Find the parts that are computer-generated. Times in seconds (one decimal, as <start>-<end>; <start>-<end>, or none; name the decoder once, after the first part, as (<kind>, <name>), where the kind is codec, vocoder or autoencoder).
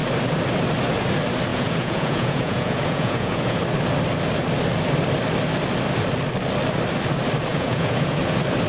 1.5-3.6 (vocoder, Vocos); 7.5-8.2